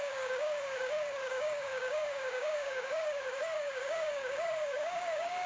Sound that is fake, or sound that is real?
fake